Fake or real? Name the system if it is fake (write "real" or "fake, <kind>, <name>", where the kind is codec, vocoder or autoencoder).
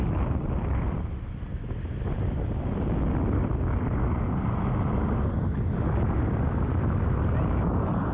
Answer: real